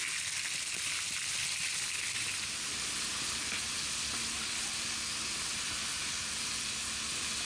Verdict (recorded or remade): recorded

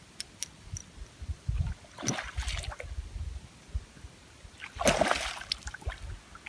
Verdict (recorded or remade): recorded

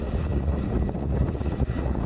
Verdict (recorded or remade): remade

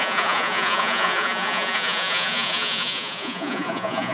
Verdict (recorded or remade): remade